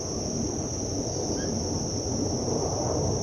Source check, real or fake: real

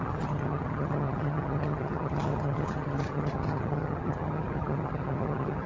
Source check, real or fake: fake